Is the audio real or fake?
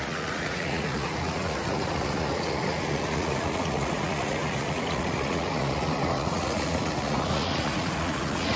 fake